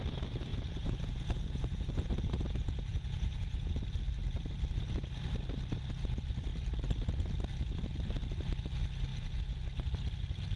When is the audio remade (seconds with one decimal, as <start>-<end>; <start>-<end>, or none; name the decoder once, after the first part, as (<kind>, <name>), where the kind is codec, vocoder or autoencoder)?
0.5-3.7 (vocoder, Vocos); 9.1-9.6